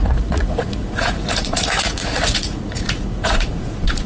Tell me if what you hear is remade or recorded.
remade